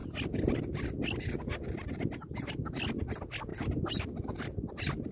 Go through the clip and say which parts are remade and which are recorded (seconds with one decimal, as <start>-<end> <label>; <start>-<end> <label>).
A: 0.0-5.1 recorded